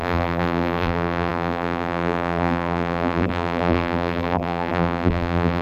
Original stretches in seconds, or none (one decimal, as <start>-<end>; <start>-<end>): none